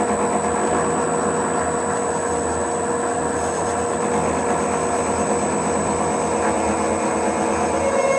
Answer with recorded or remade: recorded